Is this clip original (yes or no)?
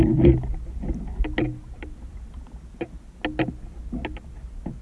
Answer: yes